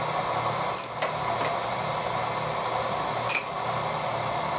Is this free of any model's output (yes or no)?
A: yes